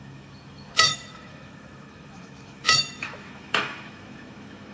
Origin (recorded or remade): remade